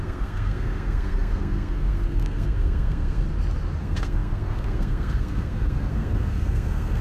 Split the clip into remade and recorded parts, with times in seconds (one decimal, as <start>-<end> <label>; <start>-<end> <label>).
0.0-3.3 remade; 3.3-3.8 recorded; 3.8-7.0 remade